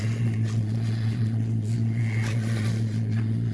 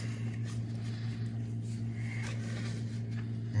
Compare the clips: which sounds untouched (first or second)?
second